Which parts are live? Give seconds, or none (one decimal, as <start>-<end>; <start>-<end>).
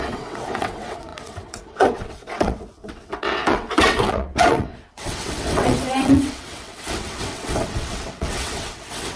none